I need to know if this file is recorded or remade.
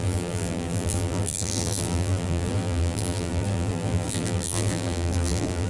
remade